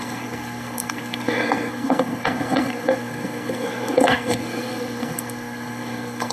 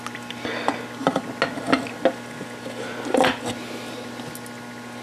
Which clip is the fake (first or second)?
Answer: first